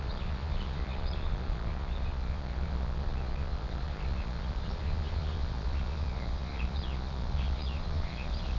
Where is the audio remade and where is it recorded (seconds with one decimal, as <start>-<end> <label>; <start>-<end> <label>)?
0.0-8.6 remade